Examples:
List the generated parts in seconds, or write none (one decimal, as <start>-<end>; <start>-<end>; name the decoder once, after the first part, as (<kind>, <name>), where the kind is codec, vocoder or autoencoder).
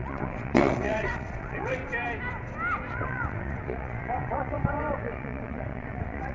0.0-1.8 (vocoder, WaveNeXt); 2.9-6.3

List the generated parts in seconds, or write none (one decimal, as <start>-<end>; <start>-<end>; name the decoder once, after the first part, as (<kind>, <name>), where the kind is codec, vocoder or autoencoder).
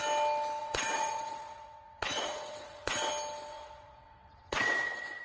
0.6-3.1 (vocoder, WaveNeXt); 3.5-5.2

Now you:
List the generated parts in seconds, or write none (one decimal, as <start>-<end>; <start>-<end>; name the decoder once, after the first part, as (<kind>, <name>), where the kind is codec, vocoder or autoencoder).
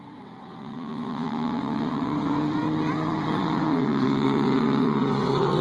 0.0-5.6 (vocoder, WaveNeXt)